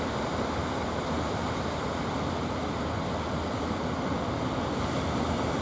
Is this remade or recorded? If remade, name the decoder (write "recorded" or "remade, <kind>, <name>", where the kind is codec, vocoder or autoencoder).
recorded